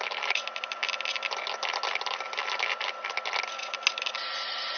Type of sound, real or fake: real